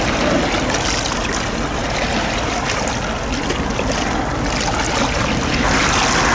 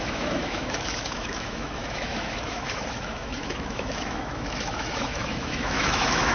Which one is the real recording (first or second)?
first